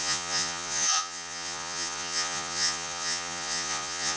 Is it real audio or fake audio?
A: fake